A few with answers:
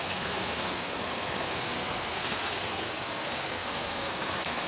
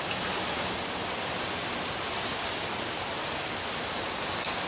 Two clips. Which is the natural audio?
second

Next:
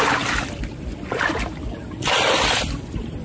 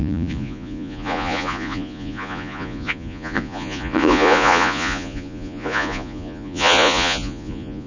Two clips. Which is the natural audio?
first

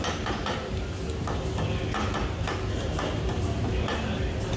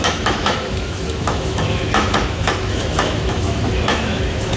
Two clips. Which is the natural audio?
first